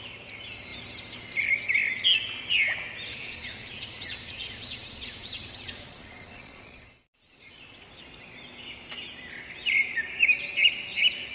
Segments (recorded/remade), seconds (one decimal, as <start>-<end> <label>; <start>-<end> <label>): 0.0-3.1 recorded; 3.1-7.8 remade; 7.8-11.3 recorded